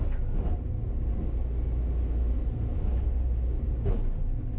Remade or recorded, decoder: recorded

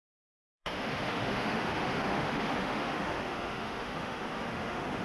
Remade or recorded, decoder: remade, autoencoder, DAC-VAE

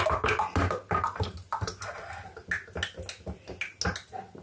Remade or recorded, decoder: recorded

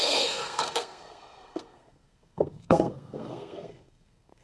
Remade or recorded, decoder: remade, codec, SNAC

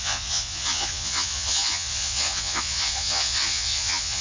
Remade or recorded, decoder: remade, vocoder, Vocos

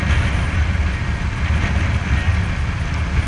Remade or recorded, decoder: recorded